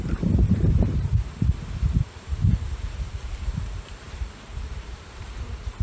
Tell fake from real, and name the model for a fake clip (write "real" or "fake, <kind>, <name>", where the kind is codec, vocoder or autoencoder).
fake, vocoder, BigVGAN v2